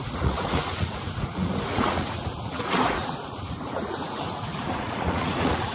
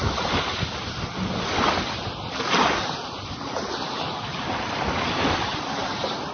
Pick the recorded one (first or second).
second